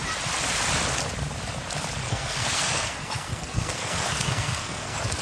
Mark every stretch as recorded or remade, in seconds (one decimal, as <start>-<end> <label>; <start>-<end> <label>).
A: 0.0-2.0 recorded; 2.0-5.2 remade